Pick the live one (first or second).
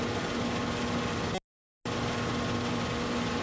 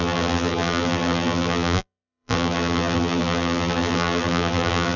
first